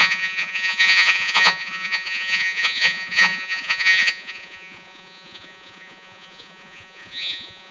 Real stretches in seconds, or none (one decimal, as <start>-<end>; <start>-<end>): none